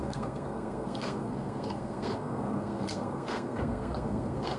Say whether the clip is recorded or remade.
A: remade